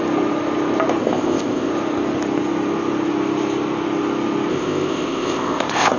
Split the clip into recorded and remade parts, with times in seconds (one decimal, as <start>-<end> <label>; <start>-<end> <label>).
0.0-1.0 recorded; 1.0-1.7 remade; 1.7-4.5 recorded; 4.5-6.0 remade